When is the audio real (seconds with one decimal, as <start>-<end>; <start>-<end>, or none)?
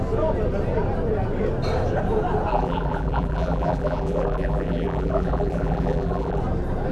0.0-2.5; 6.4-6.9